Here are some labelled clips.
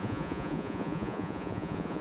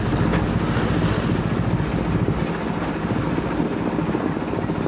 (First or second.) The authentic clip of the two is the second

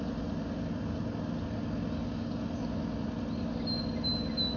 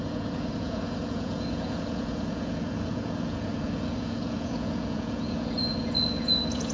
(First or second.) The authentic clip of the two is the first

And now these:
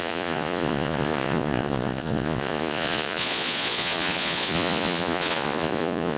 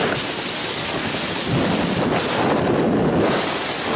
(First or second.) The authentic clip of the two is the second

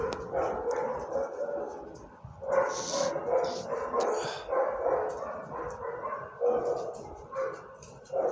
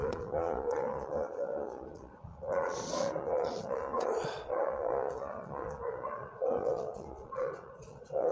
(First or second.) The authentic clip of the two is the first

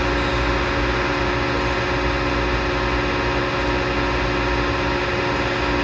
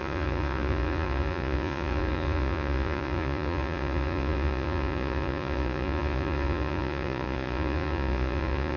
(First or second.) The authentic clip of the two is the first